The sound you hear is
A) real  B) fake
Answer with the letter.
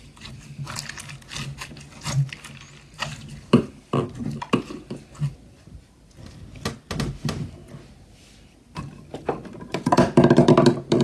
A